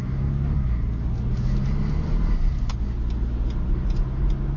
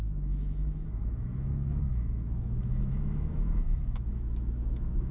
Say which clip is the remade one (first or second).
second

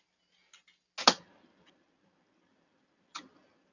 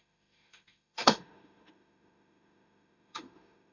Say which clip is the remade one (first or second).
second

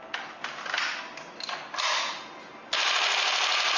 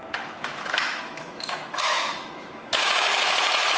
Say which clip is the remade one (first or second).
second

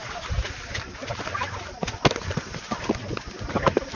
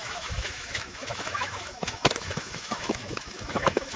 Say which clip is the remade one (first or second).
second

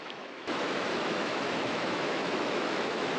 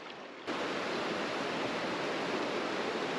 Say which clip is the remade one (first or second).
first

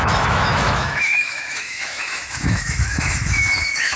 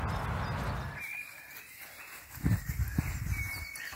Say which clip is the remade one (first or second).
first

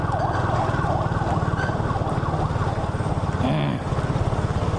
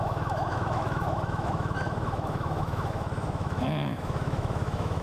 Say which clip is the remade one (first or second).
second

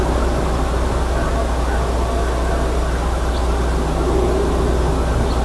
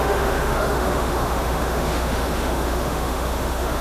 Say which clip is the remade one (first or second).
second